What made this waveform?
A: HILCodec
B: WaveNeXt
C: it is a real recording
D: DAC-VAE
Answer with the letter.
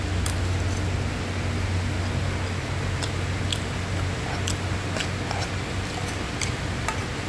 C